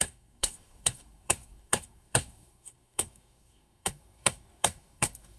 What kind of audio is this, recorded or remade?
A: remade